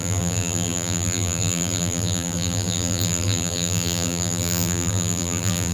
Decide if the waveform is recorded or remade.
remade